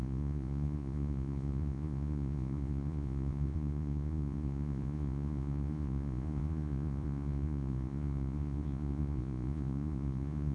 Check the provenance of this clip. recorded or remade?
remade